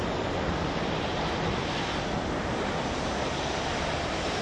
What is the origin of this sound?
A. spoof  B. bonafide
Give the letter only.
B